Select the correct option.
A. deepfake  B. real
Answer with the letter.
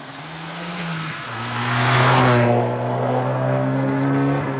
A